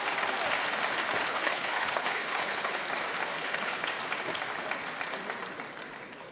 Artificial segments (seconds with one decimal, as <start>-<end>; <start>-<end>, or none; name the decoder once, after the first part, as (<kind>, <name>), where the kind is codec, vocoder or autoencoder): 1.3-2.8 (codec, HILCodec); 3.3-3.9